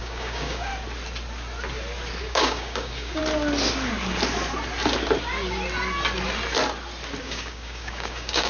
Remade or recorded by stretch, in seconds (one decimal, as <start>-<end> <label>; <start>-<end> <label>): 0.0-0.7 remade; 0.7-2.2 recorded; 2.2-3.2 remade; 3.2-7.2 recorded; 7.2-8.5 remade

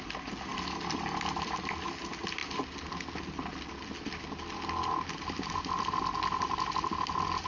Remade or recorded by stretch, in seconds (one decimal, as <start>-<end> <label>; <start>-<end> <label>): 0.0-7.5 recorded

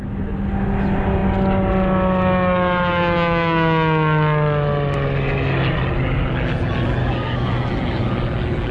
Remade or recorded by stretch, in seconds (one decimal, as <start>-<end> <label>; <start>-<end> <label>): 0.0-7.0 recorded; 7.0-7.5 remade; 7.5-8.7 recorded